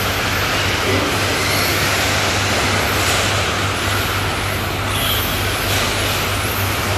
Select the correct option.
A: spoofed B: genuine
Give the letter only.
B